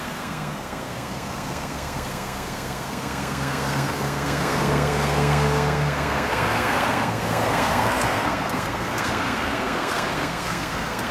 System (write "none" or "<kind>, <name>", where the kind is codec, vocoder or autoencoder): codec, SNAC